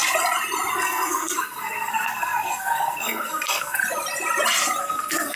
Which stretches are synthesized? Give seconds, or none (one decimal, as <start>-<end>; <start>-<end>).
0.7-3.8; 4.8-5.4